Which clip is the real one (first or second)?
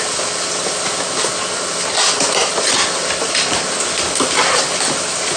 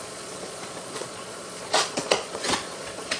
first